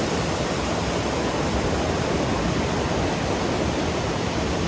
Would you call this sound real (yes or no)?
no